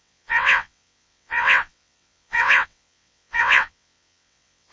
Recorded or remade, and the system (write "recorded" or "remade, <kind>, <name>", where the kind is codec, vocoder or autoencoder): remade, vocoder, WaveNeXt